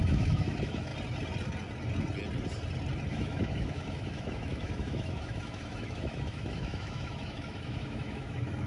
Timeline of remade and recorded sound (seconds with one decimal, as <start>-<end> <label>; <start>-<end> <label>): 0.0-0.9 remade; 0.9-3.1 recorded; 3.1-8.7 remade